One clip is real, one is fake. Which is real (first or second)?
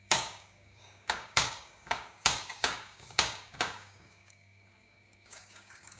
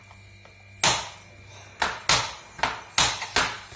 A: second